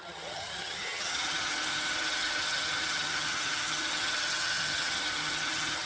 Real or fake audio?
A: fake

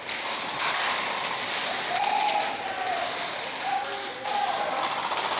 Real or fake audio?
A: real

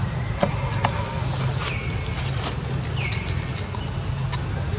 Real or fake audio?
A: real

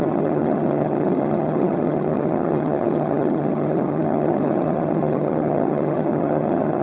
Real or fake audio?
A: fake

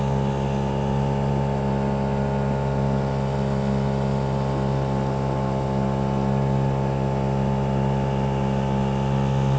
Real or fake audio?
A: real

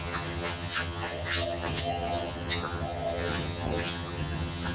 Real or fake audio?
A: fake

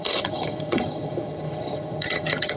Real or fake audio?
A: fake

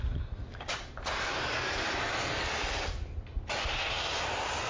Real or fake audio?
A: real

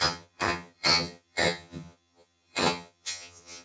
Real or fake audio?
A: fake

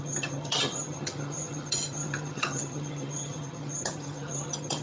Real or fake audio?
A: fake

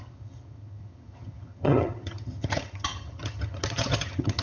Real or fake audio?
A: fake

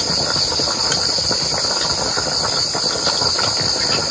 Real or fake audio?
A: real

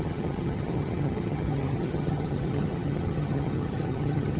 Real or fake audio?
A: fake